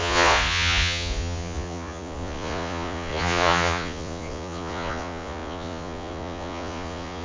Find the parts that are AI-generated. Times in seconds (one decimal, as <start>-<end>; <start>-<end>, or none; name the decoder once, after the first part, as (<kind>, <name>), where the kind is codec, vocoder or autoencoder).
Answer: 0.0-7.2 (vocoder, Vocos)